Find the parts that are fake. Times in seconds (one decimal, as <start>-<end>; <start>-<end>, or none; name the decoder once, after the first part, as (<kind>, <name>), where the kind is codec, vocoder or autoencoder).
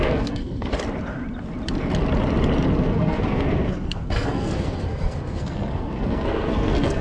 0.0-0.7 (codec, SNAC); 2.8-7.0